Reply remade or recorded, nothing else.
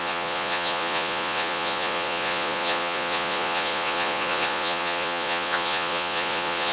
remade